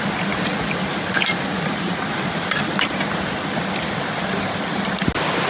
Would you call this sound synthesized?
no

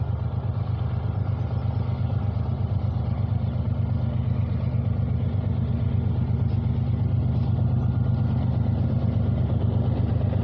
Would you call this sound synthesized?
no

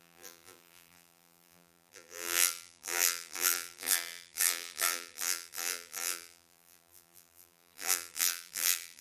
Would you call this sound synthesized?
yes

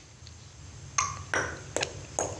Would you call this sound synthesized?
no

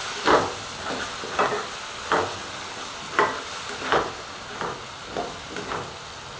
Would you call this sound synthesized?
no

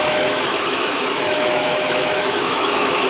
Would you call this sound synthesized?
yes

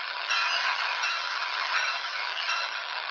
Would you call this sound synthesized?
yes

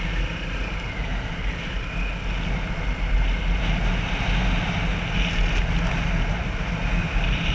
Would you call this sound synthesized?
no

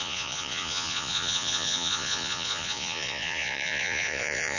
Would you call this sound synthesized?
yes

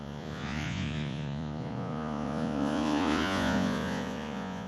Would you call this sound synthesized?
yes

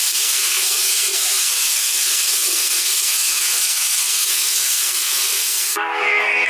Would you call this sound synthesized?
yes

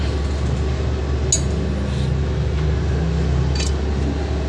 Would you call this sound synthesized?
no